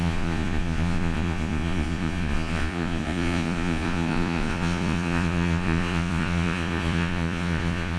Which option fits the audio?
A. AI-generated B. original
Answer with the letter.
A